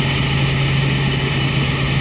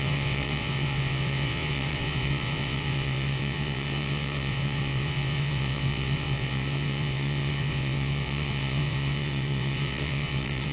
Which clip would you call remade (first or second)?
second